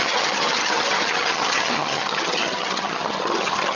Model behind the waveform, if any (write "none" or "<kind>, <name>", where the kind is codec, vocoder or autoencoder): vocoder, HiFi-GAN